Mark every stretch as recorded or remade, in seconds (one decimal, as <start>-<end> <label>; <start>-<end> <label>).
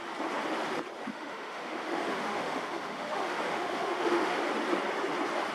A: 0.0-1.1 recorded; 1.1-4.4 remade; 4.4-5.5 recorded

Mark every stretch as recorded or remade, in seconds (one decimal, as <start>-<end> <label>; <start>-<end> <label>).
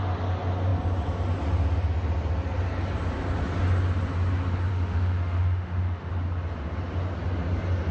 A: 0.0-4.7 recorded; 4.7-6.1 remade; 6.1-7.9 recorded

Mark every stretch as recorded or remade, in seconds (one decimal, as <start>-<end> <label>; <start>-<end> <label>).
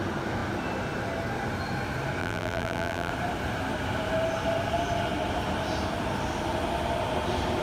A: 0.0-2.2 recorded; 2.2-3.1 remade; 3.1-7.6 recorded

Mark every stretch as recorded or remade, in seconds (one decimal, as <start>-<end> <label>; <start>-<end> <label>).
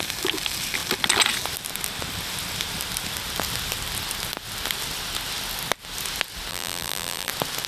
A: 0.0-6.5 recorded; 6.5-7.3 remade; 7.3-7.7 recorded